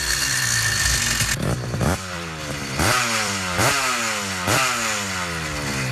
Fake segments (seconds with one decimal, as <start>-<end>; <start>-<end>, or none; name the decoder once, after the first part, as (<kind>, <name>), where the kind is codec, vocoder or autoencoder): 1.8-3.7 (vocoder, BigVGAN v2)